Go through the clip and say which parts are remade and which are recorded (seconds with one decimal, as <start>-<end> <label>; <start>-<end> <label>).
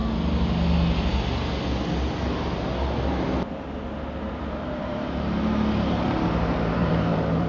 0.0-4.4 recorded; 4.4-7.5 remade